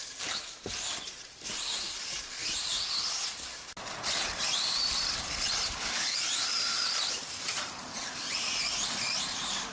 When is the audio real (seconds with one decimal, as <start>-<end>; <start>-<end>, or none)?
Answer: none